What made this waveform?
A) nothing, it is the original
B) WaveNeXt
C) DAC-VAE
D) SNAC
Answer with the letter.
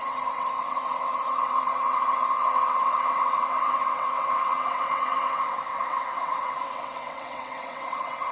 B